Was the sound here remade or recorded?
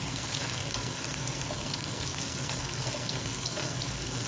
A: remade